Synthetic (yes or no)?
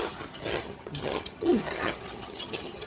yes